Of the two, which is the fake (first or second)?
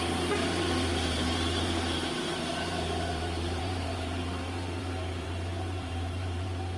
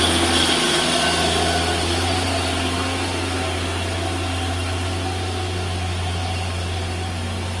first